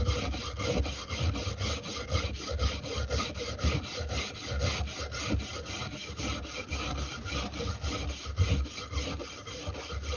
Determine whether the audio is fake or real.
real